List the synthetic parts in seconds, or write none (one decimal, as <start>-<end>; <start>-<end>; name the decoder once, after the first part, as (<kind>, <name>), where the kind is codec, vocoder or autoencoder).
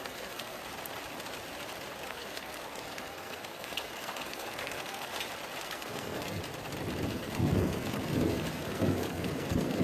0.0-0.6 (codec, SNAC); 2.1-5.1; 5.6-6.4; 7.1-9.8